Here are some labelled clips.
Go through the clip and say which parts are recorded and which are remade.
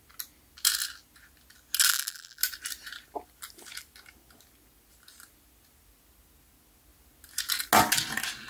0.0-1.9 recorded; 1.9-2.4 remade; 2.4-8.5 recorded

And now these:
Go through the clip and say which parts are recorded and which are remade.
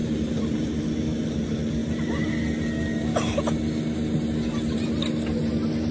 0.0-0.8 remade; 0.8-5.9 recorded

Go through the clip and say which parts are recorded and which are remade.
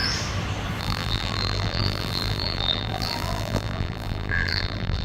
0.0-0.8 recorded; 0.8-5.0 remade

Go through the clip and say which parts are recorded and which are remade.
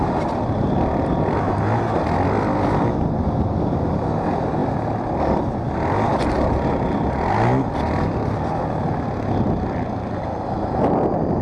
0.0-11.4 recorded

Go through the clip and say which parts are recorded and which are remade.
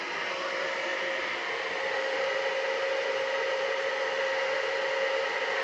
0.0-5.6 recorded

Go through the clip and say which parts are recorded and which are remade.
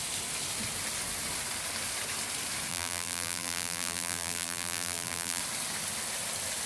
0.0-2.7 recorded; 2.7-5.4 remade; 5.4-6.7 recorded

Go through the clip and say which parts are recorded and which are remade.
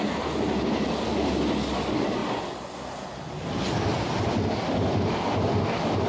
0.0-6.1 recorded